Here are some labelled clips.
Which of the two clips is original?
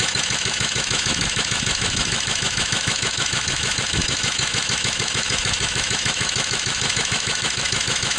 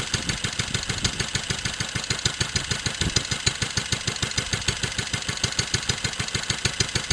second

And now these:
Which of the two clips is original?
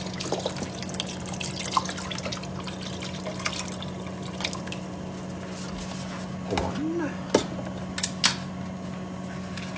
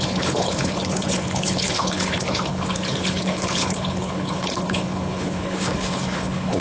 first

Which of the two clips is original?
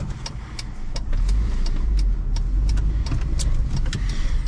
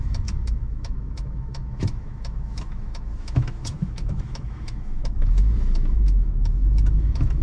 first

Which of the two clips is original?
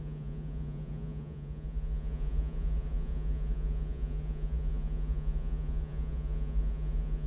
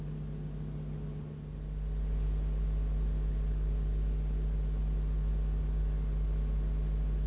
second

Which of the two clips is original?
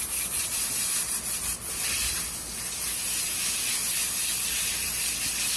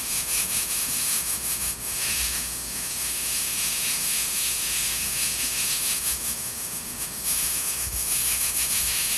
first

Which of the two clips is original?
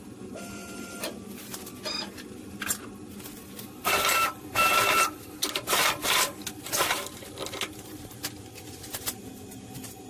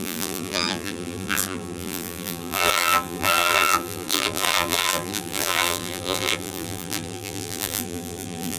first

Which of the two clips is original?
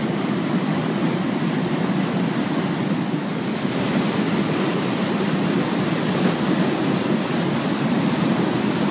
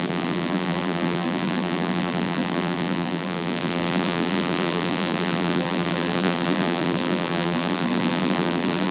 first